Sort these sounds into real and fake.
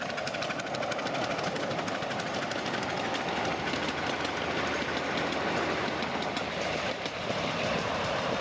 real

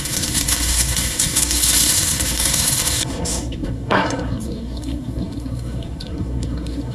fake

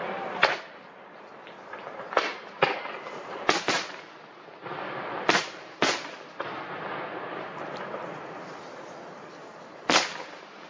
real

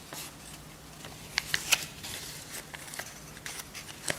real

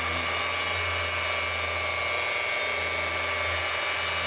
real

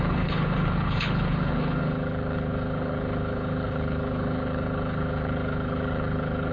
fake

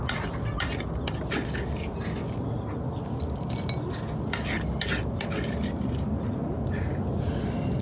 real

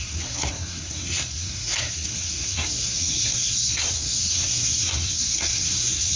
fake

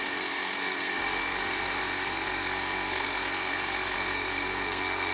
fake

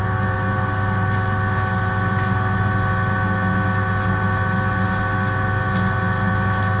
real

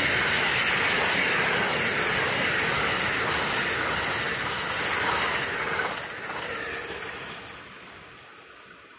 real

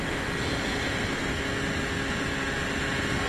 real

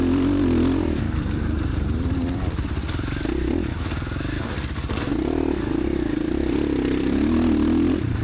fake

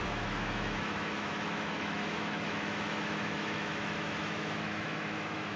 fake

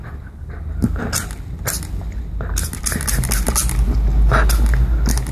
real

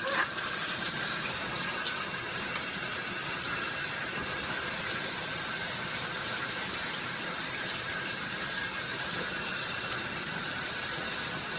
fake